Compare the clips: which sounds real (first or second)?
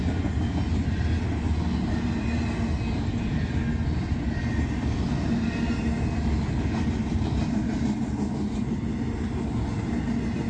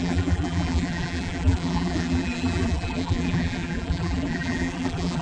first